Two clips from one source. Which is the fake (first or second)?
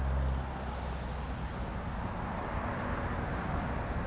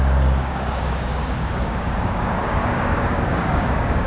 second